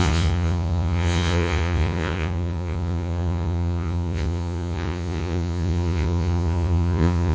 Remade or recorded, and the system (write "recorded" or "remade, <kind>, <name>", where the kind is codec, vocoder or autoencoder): remade, vocoder, Vocos